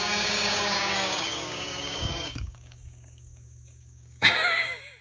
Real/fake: fake